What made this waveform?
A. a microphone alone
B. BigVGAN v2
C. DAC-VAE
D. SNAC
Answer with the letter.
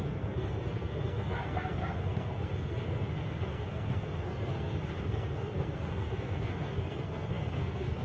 D